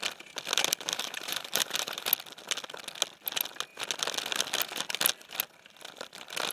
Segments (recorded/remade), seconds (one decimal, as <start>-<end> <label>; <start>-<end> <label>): 0.0-0.9 recorded; 0.9-2.1 remade; 2.1-6.5 recorded